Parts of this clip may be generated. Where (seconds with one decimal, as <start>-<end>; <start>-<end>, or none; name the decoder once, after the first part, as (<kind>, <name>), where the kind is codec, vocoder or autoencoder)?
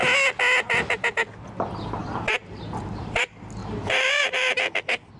2.0-3.2 (vocoder, BigVGAN v2); 3.6-4.6